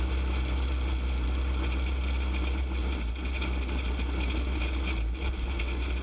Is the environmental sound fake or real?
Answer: real